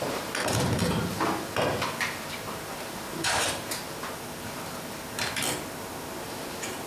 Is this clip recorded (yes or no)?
yes